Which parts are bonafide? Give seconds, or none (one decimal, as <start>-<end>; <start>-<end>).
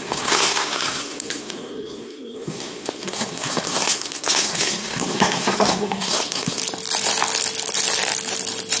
6.6-8.8